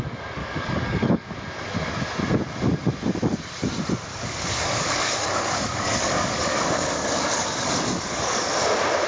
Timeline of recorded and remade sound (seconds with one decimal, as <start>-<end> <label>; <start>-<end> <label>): 0.0-0.4 recorded; 0.4-1.3 remade; 1.3-4.1 recorded; 4.1-8.5 remade; 8.5-9.1 recorded